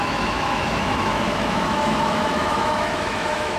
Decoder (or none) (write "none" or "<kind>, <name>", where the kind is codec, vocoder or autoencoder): autoencoder, DAC-VAE